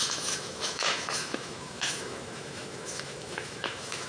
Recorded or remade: remade